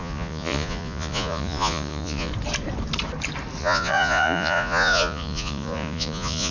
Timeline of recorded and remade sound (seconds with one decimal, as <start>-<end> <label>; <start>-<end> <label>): 0.0-2.3 remade; 2.3-3.6 recorded; 3.6-6.5 remade